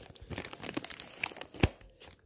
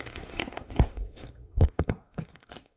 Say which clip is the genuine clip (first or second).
first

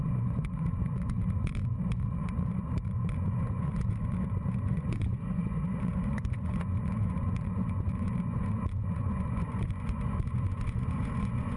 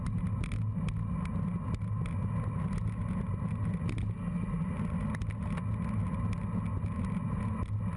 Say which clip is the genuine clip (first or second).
second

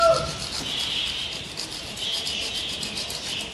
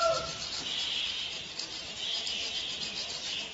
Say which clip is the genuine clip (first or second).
first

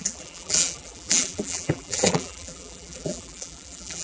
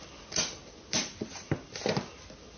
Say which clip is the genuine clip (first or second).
second